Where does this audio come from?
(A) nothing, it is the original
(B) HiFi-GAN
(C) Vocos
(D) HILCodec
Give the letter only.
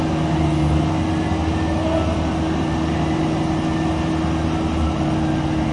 A